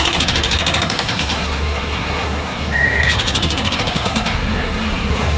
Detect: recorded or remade remade